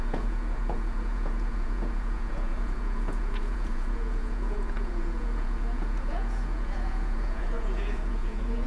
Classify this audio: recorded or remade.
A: remade